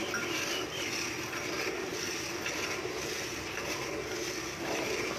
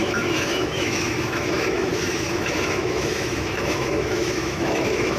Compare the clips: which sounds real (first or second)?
first